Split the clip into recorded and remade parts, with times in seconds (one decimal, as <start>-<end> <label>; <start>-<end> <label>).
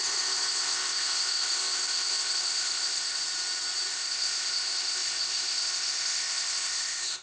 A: 0.0-3.2 remade; 3.2-3.9 recorded; 3.9-7.2 remade